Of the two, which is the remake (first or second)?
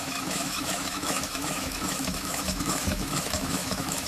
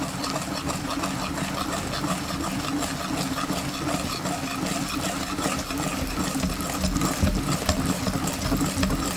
first